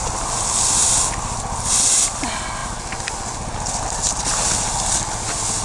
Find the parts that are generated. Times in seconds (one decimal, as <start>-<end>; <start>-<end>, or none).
none